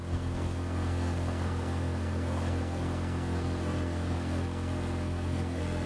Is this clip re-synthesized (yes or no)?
yes